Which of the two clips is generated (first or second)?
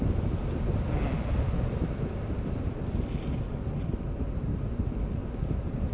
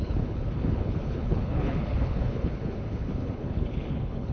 second